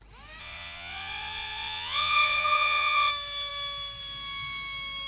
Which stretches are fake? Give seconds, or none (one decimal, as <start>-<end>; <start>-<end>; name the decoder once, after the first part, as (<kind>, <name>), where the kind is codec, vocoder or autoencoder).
0.4-3.1 (vocoder, WaveNeXt)